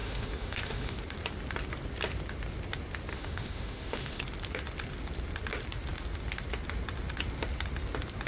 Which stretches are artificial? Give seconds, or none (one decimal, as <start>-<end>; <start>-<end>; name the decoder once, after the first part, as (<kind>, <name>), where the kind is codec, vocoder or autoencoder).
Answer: 0.0-1.0 (autoencoder, DAC-VAE); 3.1-4.2